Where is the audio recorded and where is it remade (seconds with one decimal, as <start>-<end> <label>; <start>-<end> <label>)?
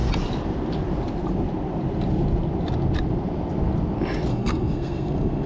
0.0-4.3 recorded; 4.3-5.5 remade